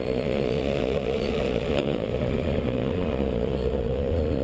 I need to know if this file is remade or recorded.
remade